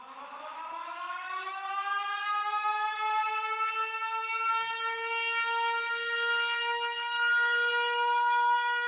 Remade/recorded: remade